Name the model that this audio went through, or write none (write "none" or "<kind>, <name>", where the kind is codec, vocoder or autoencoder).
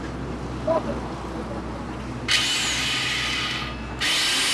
none